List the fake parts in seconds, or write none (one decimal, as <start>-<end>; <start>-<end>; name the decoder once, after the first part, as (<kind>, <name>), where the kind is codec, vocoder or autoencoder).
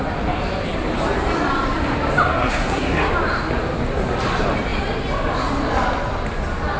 2.3-3.1 (codec, SNAC)